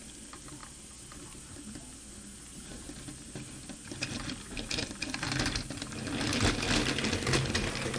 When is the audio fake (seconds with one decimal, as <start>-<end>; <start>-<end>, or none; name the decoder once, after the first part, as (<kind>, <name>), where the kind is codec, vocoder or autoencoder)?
none